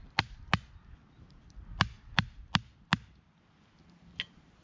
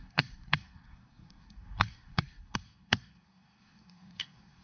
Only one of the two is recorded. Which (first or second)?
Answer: first